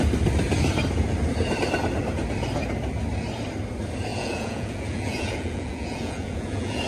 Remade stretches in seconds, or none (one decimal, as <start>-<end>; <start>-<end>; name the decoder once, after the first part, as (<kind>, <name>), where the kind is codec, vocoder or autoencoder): 4.1-6.9 (vocoder, Vocos)